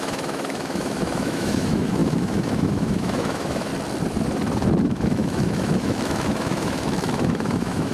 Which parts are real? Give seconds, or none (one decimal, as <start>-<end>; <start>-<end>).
3.7-4.8